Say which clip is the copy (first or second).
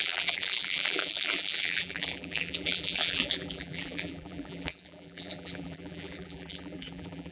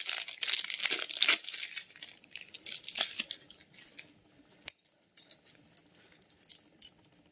first